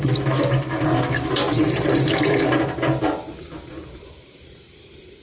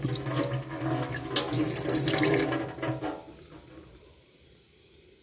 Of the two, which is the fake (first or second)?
first